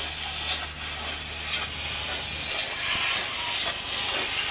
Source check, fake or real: real